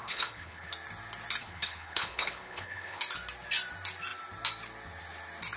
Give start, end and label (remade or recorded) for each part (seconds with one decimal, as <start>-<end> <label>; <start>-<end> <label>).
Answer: 0.0-0.7 remade; 0.7-1.4 recorded; 1.4-3.0 remade; 3.0-5.6 recorded